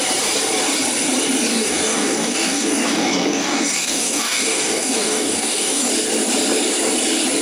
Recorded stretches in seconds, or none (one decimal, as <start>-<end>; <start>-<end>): 0.0-1.5; 5.9-7.4